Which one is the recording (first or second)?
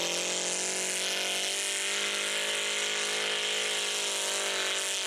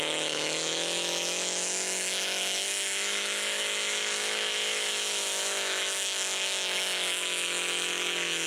first